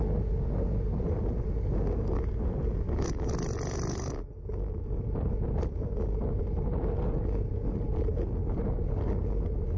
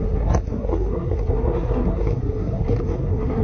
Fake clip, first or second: second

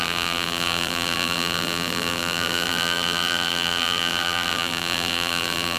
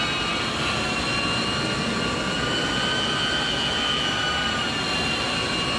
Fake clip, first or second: first